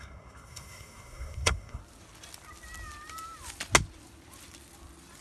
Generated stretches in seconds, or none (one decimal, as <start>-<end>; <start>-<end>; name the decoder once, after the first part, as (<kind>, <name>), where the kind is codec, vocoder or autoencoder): 0.0-1.8 (codec, SNAC)